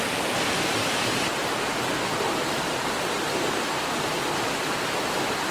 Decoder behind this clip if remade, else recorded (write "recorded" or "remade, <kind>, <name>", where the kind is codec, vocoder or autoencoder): recorded